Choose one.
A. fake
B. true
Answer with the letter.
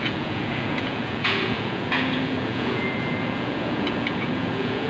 A